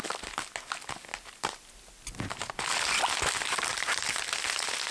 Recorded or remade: recorded